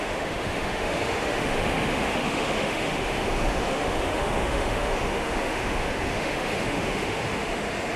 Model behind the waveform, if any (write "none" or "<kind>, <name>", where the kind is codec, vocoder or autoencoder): autoencoder, DAC-VAE